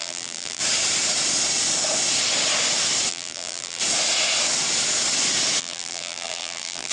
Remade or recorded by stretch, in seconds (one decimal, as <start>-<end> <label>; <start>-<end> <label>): 0.0-0.6 remade; 0.6-3.1 recorded; 3.1-3.8 remade; 3.8-5.6 recorded; 5.6-6.9 remade